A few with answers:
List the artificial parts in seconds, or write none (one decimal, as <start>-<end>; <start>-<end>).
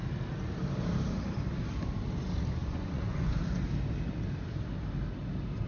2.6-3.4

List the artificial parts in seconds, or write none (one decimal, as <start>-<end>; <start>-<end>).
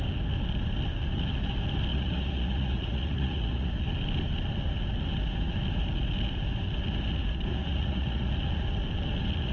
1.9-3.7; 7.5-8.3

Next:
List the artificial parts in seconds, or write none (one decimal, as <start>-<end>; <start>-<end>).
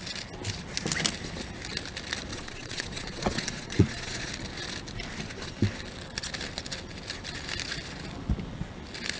2.3-4.3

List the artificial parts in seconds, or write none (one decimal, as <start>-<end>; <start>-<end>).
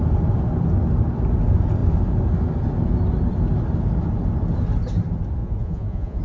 5.4-6.2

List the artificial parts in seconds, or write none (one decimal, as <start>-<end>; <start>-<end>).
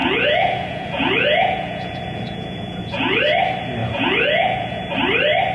0.0-3.2; 3.8-4.8